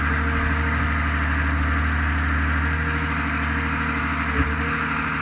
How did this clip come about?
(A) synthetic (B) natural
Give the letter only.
B